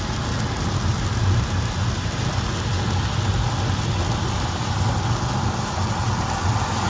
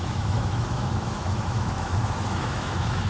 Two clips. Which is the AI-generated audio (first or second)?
second